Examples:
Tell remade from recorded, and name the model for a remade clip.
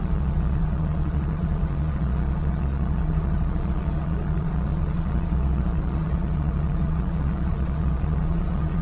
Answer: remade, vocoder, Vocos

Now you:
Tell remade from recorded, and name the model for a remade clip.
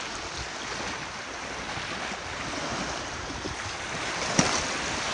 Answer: recorded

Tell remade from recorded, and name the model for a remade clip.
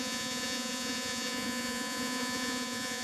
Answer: remade, vocoder, Vocos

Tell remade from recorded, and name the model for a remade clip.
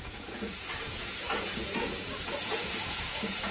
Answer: remade, vocoder, Vocos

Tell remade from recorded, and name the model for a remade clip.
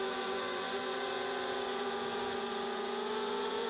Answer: remade, vocoder, Vocos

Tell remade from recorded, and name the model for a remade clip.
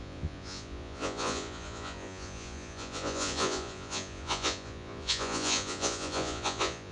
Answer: remade, vocoder, Vocos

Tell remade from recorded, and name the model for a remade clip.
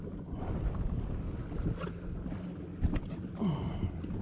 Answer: recorded